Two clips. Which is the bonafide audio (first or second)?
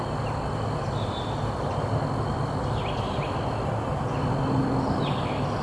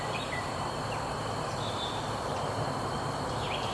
first